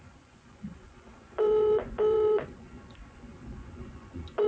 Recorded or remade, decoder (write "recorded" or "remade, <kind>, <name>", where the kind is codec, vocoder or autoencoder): remade, vocoder, Vocos